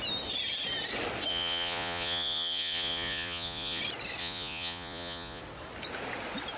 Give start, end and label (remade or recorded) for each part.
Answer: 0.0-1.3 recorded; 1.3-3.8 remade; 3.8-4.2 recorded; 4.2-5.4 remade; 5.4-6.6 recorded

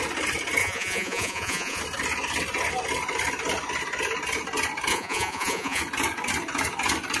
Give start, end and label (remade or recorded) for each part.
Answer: 0.0-0.6 recorded; 0.6-1.8 remade; 1.8-4.9 recorded; 4.9-5.8 remade; 5.8-7.2 recorded

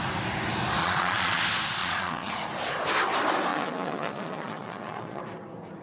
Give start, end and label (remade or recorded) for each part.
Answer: 0.0-0.8 recorded; 0.8-1.4 remade; 1.4-1.8 recorded; 1.8-2.3 remade; 2.3-3.5 recorded; 3.5-5.2 remade; 5.2-5.8 recorded

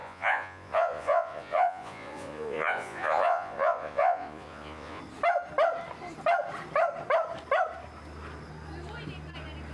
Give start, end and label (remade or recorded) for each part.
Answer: 0.0-5.0 remade; 5.0-9.7 recorded

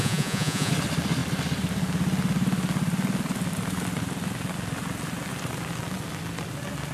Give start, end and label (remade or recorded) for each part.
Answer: 0.0-0.7 remade; 0.7-6.9 recorded

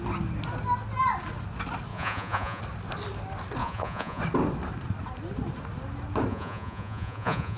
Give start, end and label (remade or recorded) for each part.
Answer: 0.0-1.9 recorded; 1.9-2.6 remade; 2.6-3.6 recorded; 3.6-4.2 remade; 4.2-6.3 recorded; 6.3-7.6 remade

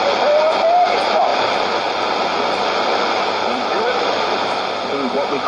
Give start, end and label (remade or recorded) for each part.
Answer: 0.0-5.5 recorded